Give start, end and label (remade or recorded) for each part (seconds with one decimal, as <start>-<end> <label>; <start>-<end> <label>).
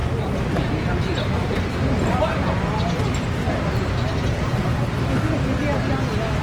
0.0-6.4 recorded